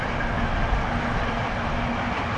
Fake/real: real